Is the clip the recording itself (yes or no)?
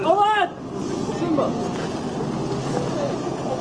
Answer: yes